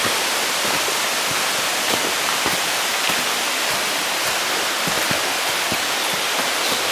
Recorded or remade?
recorded